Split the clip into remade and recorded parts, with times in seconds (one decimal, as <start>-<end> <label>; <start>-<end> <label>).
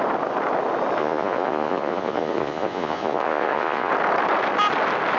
0.0-1.0 recorded; 1.0-3.9 remade; 3.9-5.2 recorded